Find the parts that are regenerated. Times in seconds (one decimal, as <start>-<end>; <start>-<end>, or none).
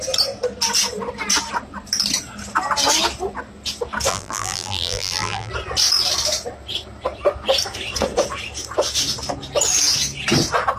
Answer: 4.1-5.5